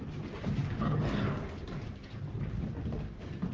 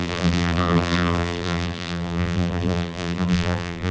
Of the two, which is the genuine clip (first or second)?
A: first